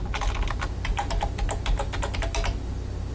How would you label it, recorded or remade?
recorded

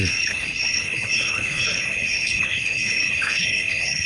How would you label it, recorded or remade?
remade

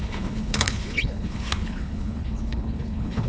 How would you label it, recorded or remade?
remade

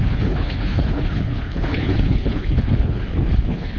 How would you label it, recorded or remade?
remade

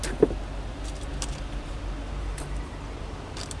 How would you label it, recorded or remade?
recorded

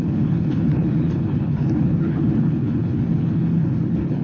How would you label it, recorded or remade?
remade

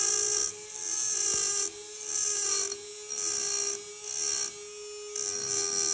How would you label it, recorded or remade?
recorded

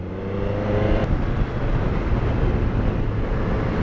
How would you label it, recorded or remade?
recorded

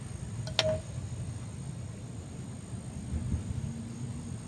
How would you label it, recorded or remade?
recorded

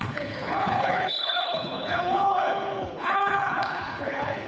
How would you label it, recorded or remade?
remade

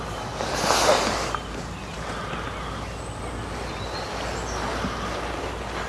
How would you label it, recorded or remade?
recorded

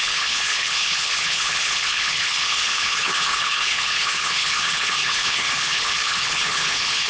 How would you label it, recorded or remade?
remade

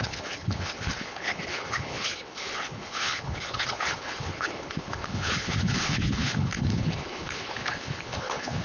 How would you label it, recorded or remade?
remade